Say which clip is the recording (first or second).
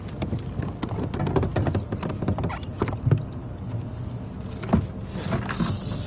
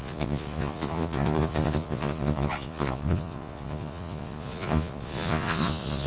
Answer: first